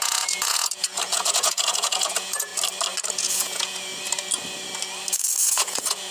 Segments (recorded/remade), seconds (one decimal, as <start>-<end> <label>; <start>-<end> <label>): 0.0-2.5 remade; 2.5-3.1 recorded; 3.1-3.9 remade; 3.9-5.4 recorded; 5.4-6.1 remade

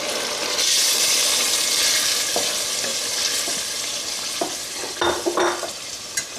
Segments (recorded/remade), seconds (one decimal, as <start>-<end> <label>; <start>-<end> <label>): 0.0-6.4 recorded